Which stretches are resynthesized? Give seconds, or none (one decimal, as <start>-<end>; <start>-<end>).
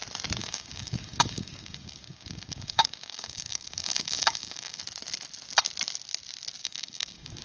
0.4-4.8; 6.6-7.4